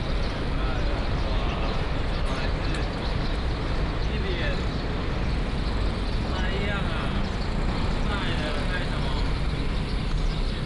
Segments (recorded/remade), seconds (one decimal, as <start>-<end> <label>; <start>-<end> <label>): 0.0-10.7 recorded